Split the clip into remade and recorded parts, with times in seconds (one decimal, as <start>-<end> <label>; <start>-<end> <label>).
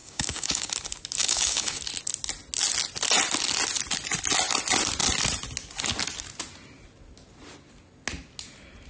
0.0-0.7 remade; 0.7-1.2 recorded; 1.2-1.8 remade; 1.8-8.9 recorded